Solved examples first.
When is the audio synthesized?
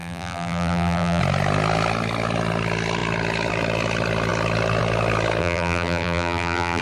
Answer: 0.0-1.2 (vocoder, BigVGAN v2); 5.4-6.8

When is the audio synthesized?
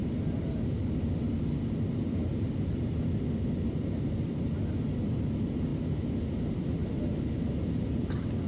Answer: none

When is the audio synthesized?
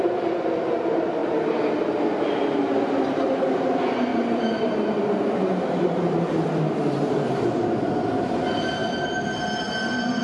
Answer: 4.1-7.6 (vocoder, BigVGAN v2)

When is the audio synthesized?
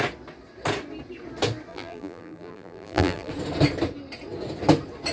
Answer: 1.7-3.3 (vocoder, BigVGAN v2)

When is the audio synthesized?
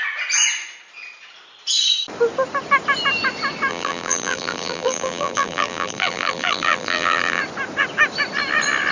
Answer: 3.7-7.4 (vocoder, BigVGAN v2)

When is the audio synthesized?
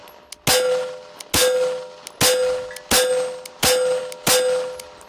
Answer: none